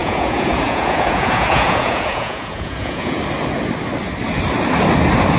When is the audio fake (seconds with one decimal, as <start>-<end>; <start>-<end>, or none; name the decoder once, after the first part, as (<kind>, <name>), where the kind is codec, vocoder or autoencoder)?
0.0-3.2 (vocoder, Vocos)